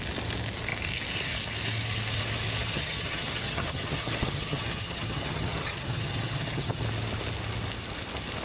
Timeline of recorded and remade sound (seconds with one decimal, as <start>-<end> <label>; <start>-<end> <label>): 0.0-2.6 recorded; 2.6-6.8 remade; 6.8-8.4 recorded